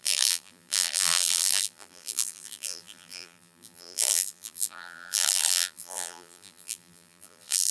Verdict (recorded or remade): remade